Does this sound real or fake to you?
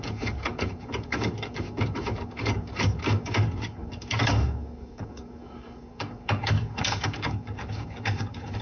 fake